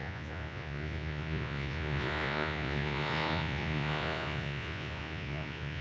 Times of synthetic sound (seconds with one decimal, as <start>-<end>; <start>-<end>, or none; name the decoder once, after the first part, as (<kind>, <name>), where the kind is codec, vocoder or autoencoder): 0.0-5.8 (vocoder, Vocos)